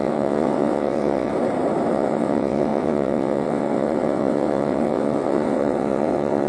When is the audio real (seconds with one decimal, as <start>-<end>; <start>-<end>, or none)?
1.3-1.9